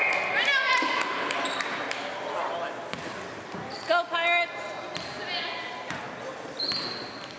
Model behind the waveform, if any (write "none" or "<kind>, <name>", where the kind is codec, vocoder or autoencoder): none